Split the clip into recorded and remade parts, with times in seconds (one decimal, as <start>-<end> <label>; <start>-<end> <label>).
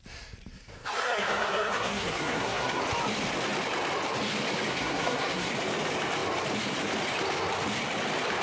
0.0-0.5 recorded; 0.5-2.8 remade; 2.8-4.7 recorded; 4.7-5.5 remade; 5.5-8.4 recorded